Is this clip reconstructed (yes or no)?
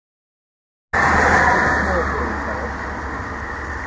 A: no